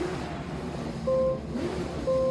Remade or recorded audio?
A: recorded